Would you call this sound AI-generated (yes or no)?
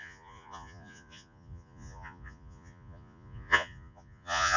yes